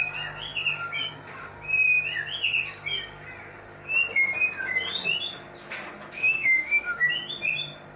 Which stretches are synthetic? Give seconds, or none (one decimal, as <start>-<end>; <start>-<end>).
6.2-7.1